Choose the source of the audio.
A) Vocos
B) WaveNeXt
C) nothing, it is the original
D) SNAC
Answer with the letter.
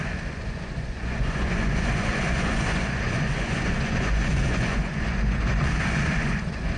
A